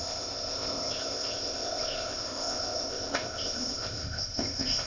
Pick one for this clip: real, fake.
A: fake